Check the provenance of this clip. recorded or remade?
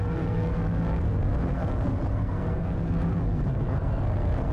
remade